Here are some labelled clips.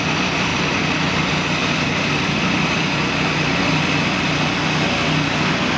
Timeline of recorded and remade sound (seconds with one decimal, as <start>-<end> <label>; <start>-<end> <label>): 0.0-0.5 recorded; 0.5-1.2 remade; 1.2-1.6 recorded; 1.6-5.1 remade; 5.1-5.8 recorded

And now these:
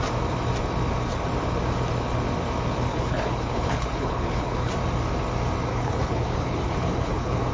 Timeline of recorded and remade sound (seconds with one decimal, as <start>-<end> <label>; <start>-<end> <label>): 0.0-2.9 recorded; 2.9-4.7 remade; 4.7-5.7 recorded; 5.7-7.5 remade

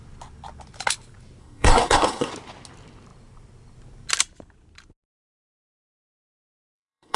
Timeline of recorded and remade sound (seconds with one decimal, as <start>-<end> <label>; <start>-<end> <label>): 0.0-1.4 recorded; 1.4-2.3 remade; 2.3-6.6 recorded; 6.6-7.2 remade

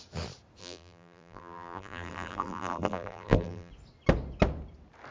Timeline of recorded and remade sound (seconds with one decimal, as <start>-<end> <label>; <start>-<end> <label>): 0.0-0.6 recorded; 0.6-3.7 remade; 3.7-5.1 recorded

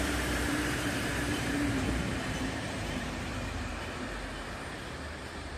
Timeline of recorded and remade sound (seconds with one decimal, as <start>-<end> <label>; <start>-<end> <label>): 0.0-3.7 remade; 3.7-5.1 recorded; 5.1-5.6 remade

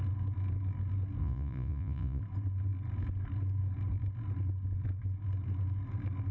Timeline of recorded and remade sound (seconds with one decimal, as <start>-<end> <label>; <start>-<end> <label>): 0.0-1.2 recorded; 1.2-2.2 remade; 2.2-6.3 recorded